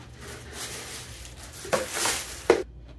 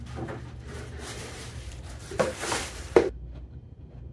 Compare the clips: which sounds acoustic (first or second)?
first